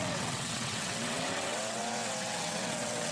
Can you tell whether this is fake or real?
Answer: fake